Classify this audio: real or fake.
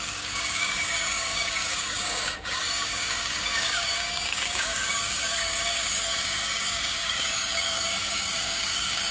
fake